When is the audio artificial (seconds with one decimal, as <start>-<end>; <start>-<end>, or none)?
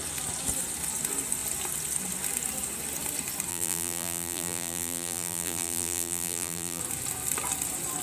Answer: 3.5-6.8